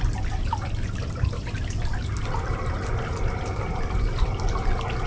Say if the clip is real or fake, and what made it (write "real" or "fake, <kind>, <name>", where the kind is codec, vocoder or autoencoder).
real